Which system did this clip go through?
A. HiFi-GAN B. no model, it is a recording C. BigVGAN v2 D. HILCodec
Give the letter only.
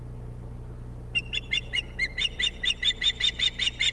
B